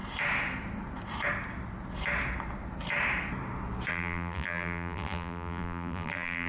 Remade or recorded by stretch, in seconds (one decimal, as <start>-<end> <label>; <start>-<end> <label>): 0.0-3.9 recorded; 3.9-6.5 remade